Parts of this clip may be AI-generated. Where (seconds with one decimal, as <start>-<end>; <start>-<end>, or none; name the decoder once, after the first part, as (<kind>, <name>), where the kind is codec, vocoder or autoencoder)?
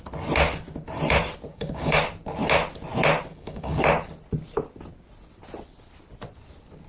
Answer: 1.5-2.0 (codec, DAC); 3.3-3.8